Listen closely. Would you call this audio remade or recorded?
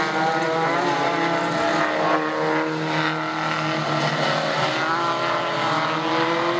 recorded